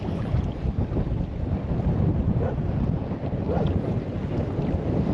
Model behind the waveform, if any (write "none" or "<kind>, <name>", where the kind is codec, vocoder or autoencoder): none